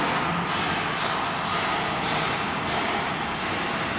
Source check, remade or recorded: recorded